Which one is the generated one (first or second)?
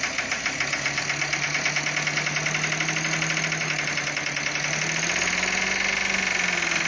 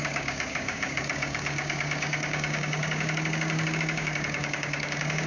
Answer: second